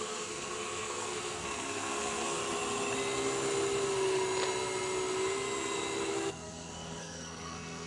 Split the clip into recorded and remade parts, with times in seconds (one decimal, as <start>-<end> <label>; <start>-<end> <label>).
0.0-2.4 remade; 2.4-6.1 recorded; 6.1-7.9 remade